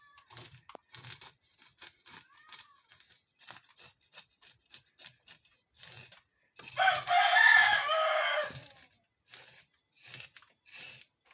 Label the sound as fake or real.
real